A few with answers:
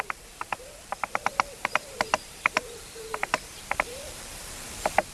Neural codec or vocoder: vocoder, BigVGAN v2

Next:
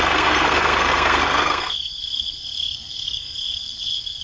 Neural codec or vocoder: codec, SNAC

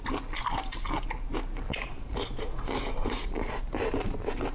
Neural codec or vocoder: none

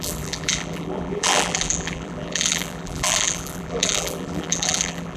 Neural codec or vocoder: vocoder, BigVGAN v2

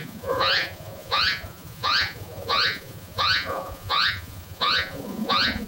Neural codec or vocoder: vocoder, Vocos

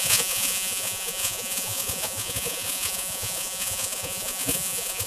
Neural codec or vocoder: vocoder, Vocos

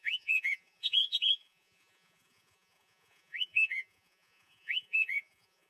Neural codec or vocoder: vocoder, Vocos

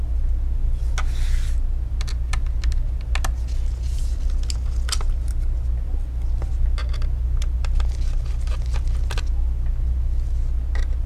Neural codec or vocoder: none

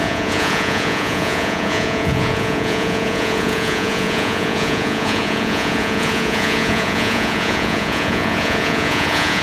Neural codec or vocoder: vocoder, Vocos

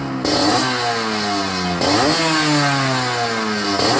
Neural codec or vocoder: none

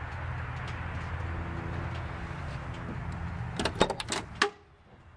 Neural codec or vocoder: none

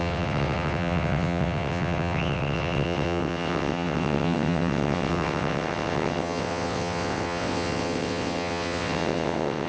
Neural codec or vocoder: vocoder, WaveNeXt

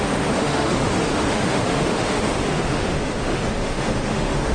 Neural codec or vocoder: autoencoder, DAC-VAE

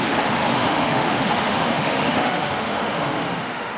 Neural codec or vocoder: autoencoder, DAC-VAE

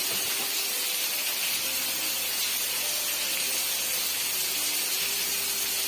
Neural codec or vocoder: none